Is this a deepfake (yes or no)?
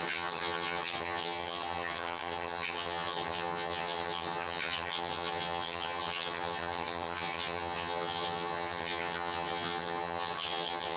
yes